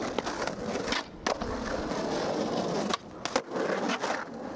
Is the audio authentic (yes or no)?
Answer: yes